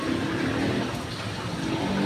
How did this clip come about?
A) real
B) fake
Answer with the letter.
A